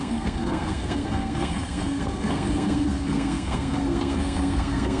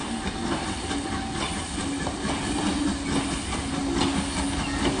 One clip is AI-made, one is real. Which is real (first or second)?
second